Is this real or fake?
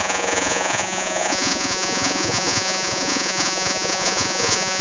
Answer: fake